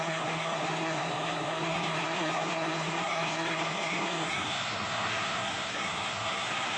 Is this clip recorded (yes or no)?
no